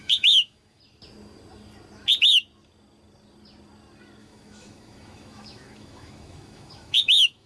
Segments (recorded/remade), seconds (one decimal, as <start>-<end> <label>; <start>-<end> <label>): 0.0-0.8 remade; 0.8-4.2 recorded; 4.2-7.5 remade